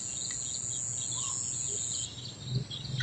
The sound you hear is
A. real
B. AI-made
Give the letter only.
A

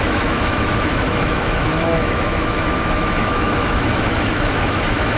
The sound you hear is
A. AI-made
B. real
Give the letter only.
A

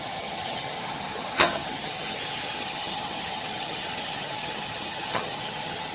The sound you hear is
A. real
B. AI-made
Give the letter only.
B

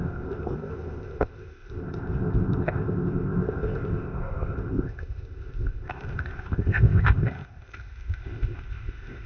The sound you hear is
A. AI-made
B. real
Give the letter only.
A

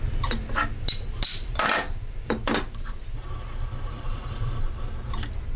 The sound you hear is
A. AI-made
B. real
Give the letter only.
B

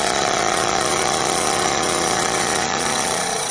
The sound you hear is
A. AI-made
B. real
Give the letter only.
A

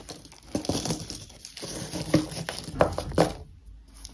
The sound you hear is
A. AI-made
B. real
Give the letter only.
B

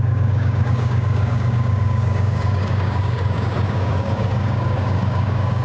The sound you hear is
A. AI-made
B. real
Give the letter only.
A